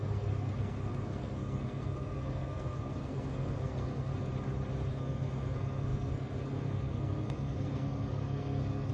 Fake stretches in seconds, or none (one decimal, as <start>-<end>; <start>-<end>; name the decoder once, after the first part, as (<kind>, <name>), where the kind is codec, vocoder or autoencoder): 0.0-4.1 (codec, SNAC); 4.9-8.9